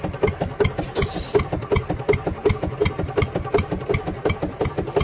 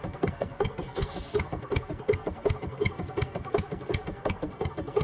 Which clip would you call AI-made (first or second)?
second